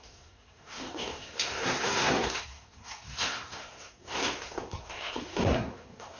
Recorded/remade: remade